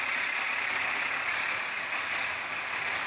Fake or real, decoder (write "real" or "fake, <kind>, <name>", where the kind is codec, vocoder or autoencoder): real